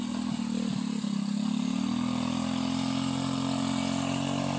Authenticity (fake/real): real